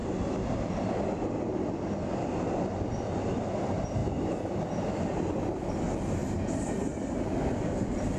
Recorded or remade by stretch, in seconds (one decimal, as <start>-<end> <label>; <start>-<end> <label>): 0.0-8.2 recorded